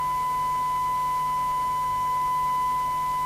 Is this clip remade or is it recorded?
remade